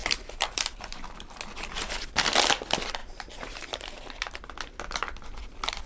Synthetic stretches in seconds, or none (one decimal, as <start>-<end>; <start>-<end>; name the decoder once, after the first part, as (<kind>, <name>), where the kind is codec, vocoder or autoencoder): 0.0-1.0 (vocoder, BigVGAN v2); 3.0-4.2